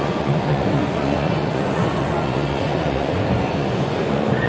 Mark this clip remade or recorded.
remade